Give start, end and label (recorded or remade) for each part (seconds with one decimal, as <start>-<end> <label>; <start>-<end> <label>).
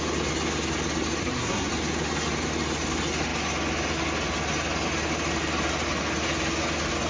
0.0-1.2 recorded; 1.2-1.7 remade; 1.7-7.1 recorded